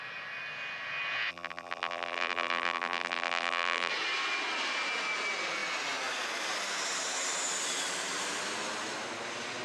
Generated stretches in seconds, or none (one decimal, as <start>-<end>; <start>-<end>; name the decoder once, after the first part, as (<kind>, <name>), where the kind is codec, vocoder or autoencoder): 1.3-3.9 (vocoder, BigVGAN v2)